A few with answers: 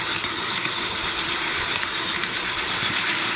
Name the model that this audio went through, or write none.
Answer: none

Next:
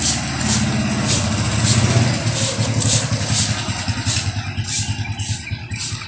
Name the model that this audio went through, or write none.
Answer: none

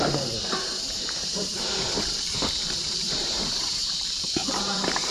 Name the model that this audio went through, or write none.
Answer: vocoder, BigVGAN v2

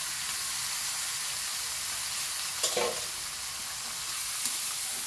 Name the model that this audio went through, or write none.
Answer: none